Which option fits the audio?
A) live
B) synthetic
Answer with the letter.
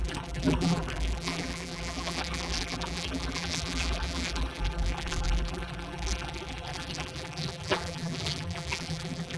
B